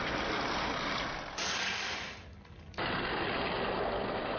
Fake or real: real